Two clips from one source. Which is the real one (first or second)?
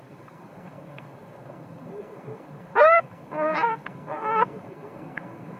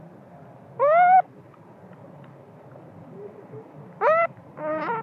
second